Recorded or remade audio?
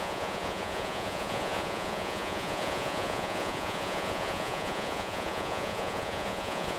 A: remade